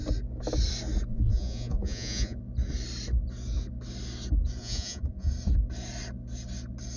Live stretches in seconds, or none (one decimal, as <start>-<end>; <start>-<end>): 0.0-1.1; 2.4-4.6; 5.3-7.0